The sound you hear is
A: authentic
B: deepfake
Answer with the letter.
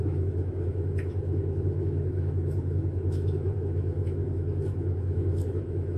B